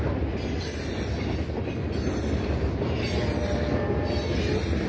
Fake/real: real